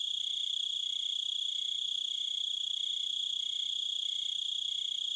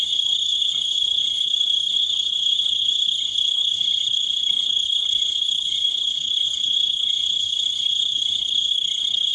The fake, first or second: second